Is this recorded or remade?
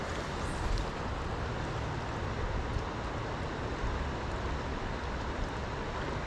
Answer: recorded